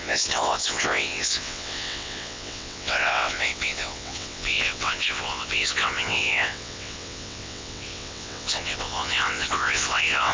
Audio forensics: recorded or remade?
remade